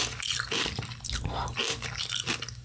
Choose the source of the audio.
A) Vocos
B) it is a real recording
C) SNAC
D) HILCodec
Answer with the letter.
B